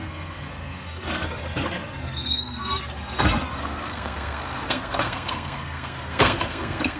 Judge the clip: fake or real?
fake